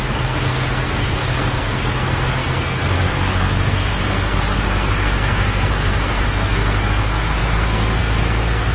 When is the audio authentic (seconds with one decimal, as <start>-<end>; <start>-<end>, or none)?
none